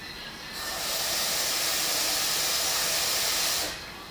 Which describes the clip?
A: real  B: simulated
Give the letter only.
A